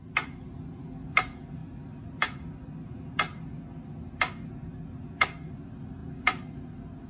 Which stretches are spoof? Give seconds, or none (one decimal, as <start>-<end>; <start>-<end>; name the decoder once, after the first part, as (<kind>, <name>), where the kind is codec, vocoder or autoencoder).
1.6-3.0 (vocoder, BigVGAN v2); 6.0-6.5